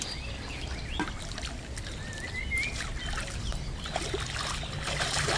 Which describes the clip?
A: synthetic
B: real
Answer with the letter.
B